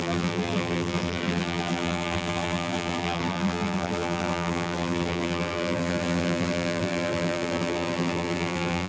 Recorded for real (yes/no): no